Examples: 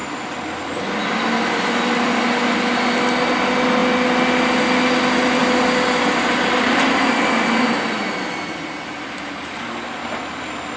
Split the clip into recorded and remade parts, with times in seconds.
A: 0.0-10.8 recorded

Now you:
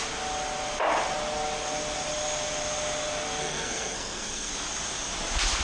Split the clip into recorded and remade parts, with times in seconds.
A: 0.0-3.4 recorded; 3.4-4.5 remade; 4.5-5.6 recorded

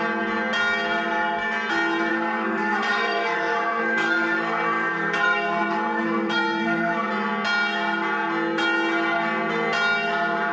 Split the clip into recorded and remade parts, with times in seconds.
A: 0.0-2.1 recorded; 2.1-7.1 remade; 7.1-10.5 recorded

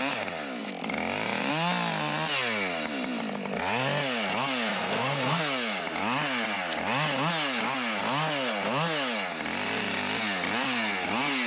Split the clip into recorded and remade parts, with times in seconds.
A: 0.0-4.7 recorded; 4.7-5.4 remade; 5.4-11.5 recorded